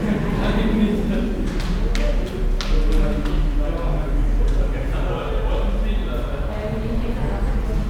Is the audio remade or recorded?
recorded